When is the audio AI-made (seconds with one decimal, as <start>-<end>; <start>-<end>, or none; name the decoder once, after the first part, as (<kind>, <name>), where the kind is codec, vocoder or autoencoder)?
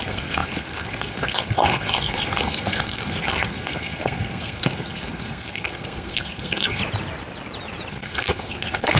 0.0-6.8 (codec, SNAC); 7.9-9.0